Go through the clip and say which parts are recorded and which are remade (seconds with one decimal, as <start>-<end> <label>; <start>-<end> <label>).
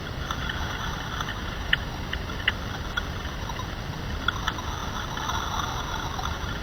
0.0-1.3 recorded; 1.3-2.5 remade; 2.5-6.6 recorded